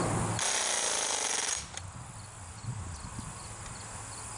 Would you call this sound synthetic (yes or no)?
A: no